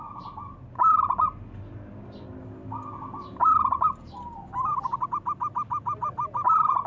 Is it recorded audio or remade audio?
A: recorded